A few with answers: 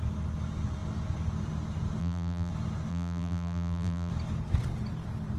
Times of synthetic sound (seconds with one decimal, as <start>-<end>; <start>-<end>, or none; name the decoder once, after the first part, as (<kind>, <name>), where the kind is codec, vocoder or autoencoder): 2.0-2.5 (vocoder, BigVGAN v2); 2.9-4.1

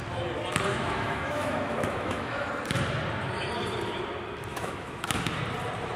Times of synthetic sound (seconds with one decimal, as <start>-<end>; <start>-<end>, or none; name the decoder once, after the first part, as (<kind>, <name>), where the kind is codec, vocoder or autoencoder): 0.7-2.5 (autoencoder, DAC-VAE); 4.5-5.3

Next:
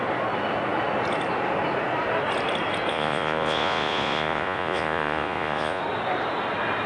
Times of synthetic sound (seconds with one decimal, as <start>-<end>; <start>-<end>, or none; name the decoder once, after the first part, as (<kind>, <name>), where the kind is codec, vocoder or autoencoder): 2.9-5.8 (vocoder, Vocos)

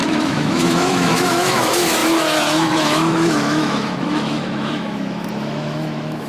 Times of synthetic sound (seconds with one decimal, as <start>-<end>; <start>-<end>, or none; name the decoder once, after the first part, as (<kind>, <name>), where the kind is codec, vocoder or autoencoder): 0.0-6.3 (autoencoder, DAC-VAE)